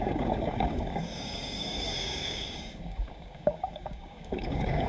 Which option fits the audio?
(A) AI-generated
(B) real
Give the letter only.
A